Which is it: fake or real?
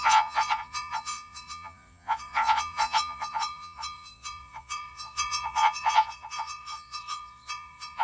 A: fake